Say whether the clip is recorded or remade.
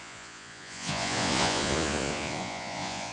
remade